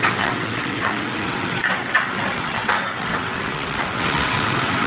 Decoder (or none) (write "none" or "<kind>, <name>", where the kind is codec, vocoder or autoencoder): vocoder, WaveNeXt